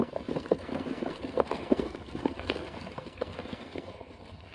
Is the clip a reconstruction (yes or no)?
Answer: yes